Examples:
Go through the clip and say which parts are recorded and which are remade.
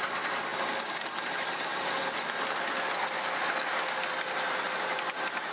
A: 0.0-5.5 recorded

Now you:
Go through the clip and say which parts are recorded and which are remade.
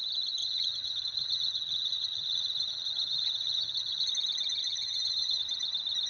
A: 0.0-0.4 recorded; 0.4-4.1 remade; 4.1-4.6 recorded; 4.6-5.4 remade; 5.4-6.1 recorded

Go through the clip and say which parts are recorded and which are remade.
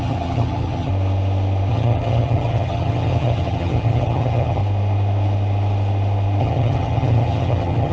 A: 0.0-0.9 remade; 0.9-1.7 recorded; 1.7-4.6 remade; 4.6-6.4 recorded; 6.4-7.9 remade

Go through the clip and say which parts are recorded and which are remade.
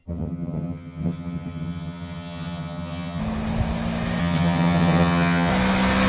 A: 0.0-3.2 remade; 3.2-4.2 recorded; 4.2-5.5 remade; 5.5-6.1 recorded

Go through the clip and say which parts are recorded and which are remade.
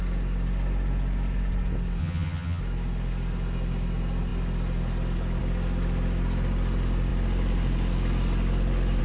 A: 0.0-2.0 recorded; 2.0-2.6 remade; 2.6-9.0 recorded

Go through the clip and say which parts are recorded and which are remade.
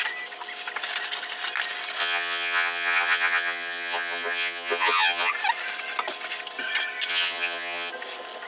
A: 0.0-2.0 recorded; 2.0-5.3 remade; 5.3-7.1 recorded; 7.1-7.9 remade; 7.9-8.5 recorded